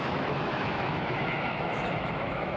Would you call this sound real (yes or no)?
no